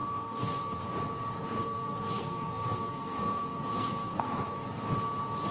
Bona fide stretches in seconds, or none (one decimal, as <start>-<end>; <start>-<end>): 0.9-1.6; 4.7-5.5